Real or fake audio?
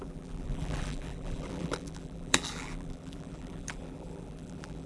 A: fake